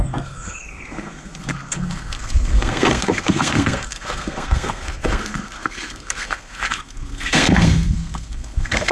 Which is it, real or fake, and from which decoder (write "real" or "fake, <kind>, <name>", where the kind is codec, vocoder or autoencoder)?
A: fake, codec, SNAC